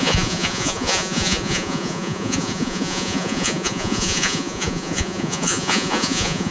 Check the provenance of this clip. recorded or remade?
remade